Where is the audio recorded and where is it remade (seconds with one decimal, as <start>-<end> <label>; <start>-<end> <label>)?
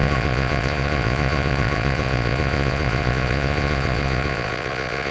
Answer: 0.0-5.1 remade